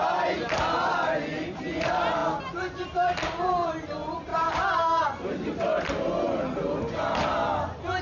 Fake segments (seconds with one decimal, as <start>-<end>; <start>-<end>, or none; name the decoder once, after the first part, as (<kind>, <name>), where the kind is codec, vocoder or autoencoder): 4.3-5.0 (vocoder, BigVGAN v2)